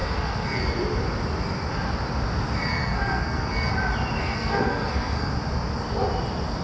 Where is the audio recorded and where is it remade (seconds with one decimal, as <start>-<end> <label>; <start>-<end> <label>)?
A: 0.0-0.6 remade; 0.6-2.7 recorded; 2.7-3.7 remade; 3.7-4.2 recorded; 4.2-5.3 remade; 5.3-6.6 recorded